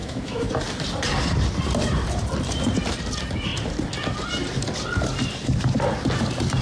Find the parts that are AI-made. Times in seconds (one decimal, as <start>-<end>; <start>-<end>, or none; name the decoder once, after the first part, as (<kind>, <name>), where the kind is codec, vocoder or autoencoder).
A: 0.0-0.5 (autoencoder, DAC-VAE)